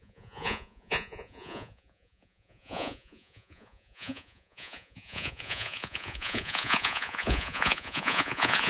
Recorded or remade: remade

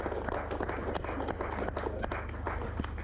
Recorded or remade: recorded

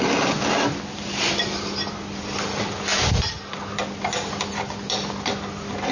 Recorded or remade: recorded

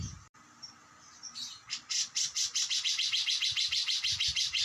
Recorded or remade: remade